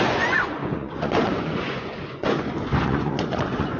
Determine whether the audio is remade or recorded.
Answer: remade